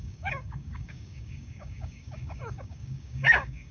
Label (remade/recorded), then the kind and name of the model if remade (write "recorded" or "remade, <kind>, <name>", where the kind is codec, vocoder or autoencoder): remade, codec, DAC